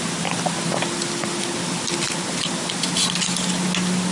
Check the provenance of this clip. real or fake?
real